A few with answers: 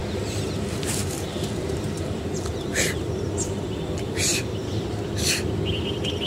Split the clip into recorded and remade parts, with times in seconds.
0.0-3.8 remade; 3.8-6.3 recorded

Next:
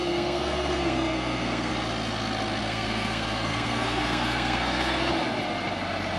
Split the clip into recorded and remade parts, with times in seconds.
0.0-1.7 remade; 1.7-2.6 recorded; 2.6-5.1 remade; 5.1-6.2 recorded

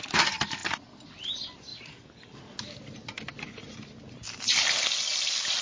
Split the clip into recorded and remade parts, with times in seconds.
0.0-5.6 recorded

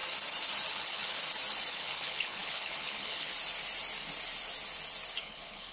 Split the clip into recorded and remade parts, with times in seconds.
0.0-0.7 recorded; 0.7-1.2 remade; 1.2-1.7 recorded; 1.7-3.3 remade; 3.3-5.2 recorded; 5.2-5.7 remade

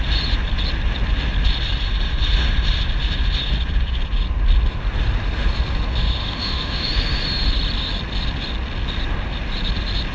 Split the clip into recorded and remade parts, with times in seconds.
0.0-6.2 recorded; 6.2-6.9 remade; 6.9-10.1 recorded

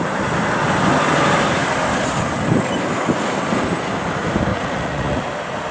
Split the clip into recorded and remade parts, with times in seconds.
0.0-4.5 recorded; 4.5-5.3 remade; 5.3-5.7 recorded